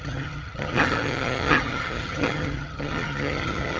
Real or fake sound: fake